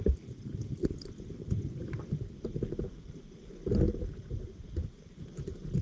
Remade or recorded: recorded